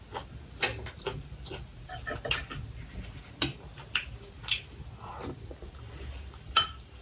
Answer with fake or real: real